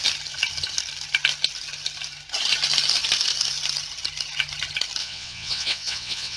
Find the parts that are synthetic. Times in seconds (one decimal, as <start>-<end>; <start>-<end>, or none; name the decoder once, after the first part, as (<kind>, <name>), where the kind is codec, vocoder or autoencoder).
5.0-6.4 (vocoder, WaveNeXt)